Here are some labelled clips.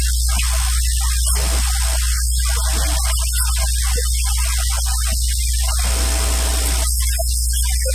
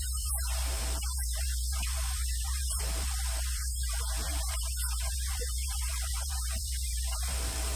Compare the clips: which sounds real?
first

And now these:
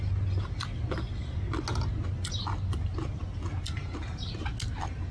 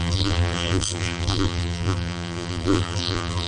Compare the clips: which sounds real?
first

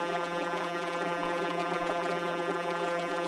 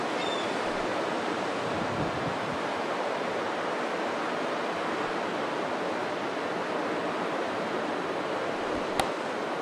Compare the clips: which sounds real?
second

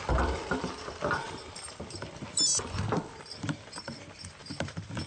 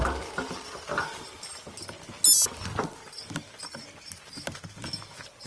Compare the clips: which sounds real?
second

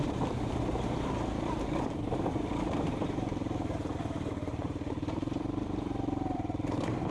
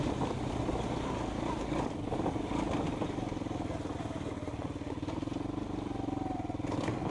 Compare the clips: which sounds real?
second